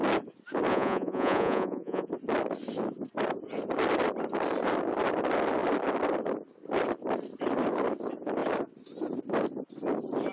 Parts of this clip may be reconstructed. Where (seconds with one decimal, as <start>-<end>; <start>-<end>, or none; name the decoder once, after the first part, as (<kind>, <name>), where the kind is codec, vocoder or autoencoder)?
0.7-2.1 (vocoder, Vocos)